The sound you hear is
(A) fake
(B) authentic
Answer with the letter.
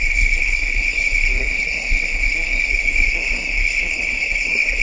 A